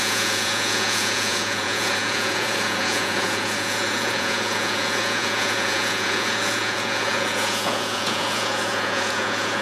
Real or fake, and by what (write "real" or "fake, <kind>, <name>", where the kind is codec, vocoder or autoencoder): fake, vocoder, Vocos